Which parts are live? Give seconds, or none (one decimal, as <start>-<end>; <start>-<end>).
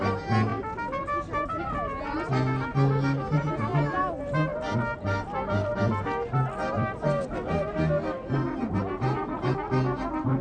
0.0-10.4